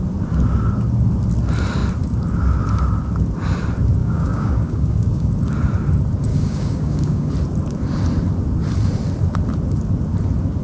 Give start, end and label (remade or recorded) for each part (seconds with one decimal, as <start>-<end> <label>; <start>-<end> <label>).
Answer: 0.0-4.0 recorded; 4.0-5.3 remade; 5.3-6.3 recorded; 6.3-7.3 remade; 7.3-10.6 recorded